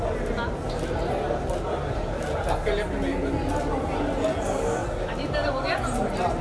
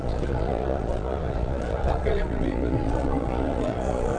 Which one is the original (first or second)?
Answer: first